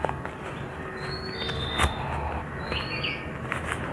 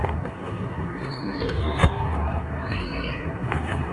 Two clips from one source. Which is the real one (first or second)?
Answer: first